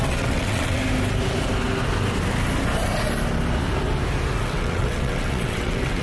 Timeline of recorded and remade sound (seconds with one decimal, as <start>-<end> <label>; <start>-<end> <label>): 0.0-0.8 remade; 0.8-4.4 recorded; 4.4-6.0 remade